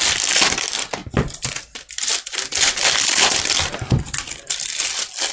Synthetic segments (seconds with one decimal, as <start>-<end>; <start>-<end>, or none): none